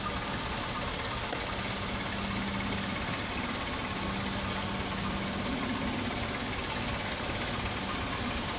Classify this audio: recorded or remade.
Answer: recorded